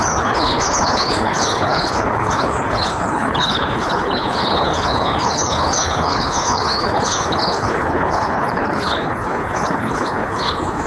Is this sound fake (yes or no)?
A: yes